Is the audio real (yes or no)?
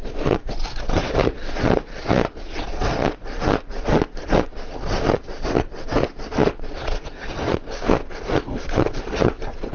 no